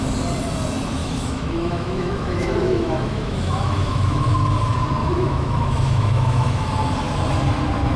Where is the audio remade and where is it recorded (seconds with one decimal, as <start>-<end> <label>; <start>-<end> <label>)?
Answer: 0.0-1.0 recorded; 1.0-4.2 remade; 4.2-5.0 recorded; 5.0-6.7 remade; 6.7-8.0 recorded